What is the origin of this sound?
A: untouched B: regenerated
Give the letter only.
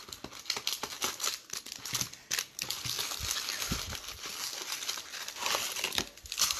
A